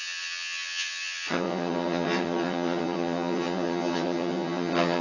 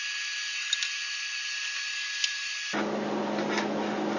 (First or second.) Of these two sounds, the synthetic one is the first